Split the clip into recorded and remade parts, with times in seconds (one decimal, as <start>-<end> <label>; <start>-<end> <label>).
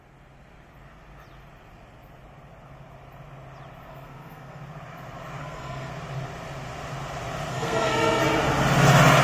0.0-3.9 recorded; 3.9-4.6 remade; 4.6-5.4 recorded; 5.4-5.9 remade; 5.9-7.5 recorded; 7.5-8.2 remade; 8.2-9.2 recorded